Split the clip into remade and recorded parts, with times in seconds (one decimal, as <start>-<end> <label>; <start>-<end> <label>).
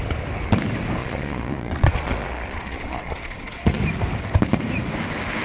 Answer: 0.0-1.0 recorded; 1.0-3.8 remade; 3.8-5.4 recorded